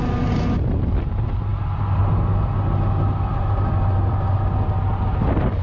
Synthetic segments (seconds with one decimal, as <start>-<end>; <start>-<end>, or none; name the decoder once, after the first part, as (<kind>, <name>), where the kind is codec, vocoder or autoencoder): none